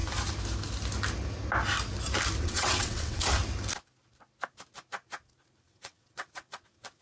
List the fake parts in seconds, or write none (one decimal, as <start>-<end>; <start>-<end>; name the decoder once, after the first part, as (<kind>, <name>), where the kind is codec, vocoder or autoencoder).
2.4-3.4 (vocoder, WaveNeXt); 5.6-7.0